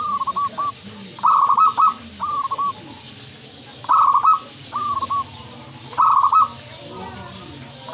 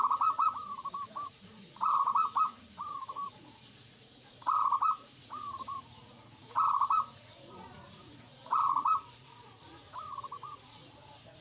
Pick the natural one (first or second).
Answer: first